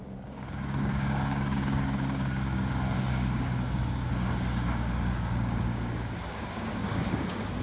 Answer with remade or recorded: remade